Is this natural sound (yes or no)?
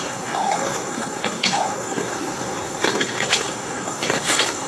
no